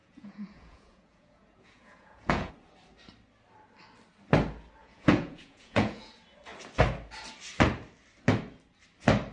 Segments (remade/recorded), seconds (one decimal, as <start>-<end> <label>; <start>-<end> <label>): 0.0-2.5 remade; 2.5-4.8 recorded; 4.8-6.1 remade; 6.1-9.3 recorded